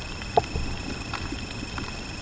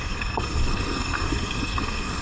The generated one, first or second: second